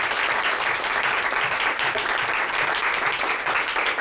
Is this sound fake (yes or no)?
yes